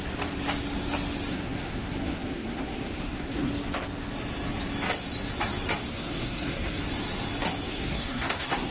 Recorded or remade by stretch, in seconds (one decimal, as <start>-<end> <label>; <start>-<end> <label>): 0.0-1.3 recorded; 1.3-3.5 remade; 3.5-5.9 recorded; 5.9-6.8 remade; 6.8-7.7 recorded; 7.7-8.7 remade